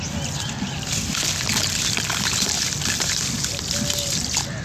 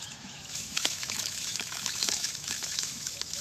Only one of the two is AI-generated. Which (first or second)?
second